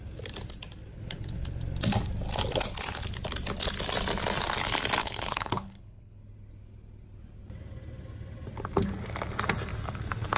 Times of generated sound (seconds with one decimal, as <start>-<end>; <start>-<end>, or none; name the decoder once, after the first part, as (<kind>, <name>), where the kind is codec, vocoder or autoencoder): 0.9-1.6 (codec, HILCodec); 5.0-6.2

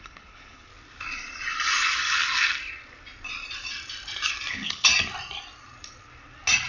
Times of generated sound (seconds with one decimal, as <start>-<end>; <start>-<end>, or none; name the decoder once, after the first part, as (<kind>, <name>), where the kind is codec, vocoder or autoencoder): 0.0-0.7 (codec, HILCodec); 4.5-4.9